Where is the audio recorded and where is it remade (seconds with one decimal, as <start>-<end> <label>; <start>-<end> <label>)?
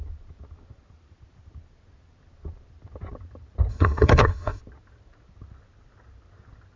0.0-3.7 recorded; 3.7-4.6 remade; 4.6-6.8 recorded